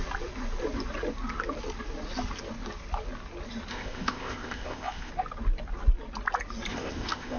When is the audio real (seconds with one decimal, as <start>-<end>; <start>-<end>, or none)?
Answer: 0.0-3.7; 5.1-6.7